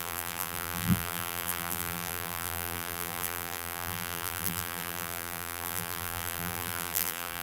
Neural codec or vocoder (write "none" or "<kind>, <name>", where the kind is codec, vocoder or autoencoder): vocoder, BigVGAN v2